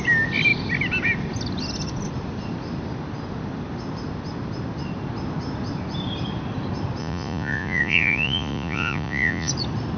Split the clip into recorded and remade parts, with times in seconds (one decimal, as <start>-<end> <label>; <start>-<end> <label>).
0.0-7.0 recorded; 7.0-9.5 remade; 9.5-10.0 recorded